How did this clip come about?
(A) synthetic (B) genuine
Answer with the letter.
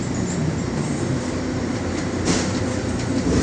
A